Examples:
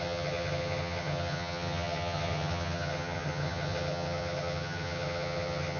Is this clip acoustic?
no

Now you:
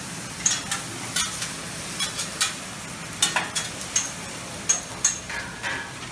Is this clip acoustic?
yes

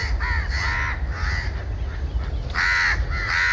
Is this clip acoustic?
yes